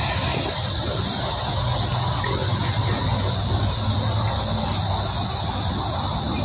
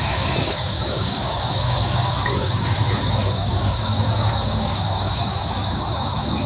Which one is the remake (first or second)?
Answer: second